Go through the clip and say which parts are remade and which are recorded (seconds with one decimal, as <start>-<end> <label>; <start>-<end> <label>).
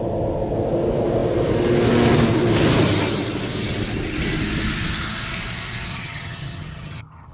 0.0-5.9 recorded; 5.9-7.3 remade